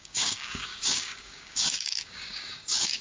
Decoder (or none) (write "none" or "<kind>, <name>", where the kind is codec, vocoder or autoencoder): codec, DAC